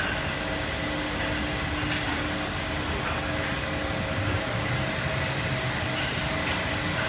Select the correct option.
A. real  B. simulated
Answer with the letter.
A